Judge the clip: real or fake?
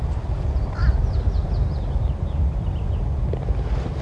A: real